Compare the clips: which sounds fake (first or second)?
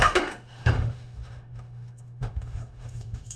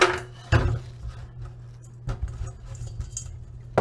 first